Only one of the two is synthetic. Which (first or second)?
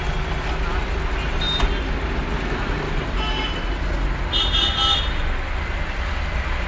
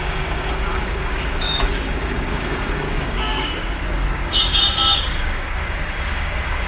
second